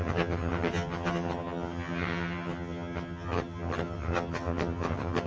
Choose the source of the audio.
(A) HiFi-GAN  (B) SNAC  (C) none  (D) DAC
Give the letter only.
A